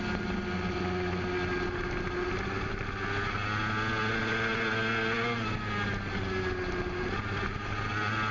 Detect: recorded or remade recorded